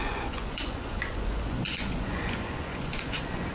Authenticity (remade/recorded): remade